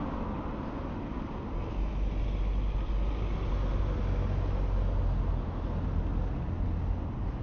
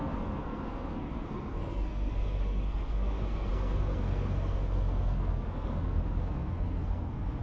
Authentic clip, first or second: first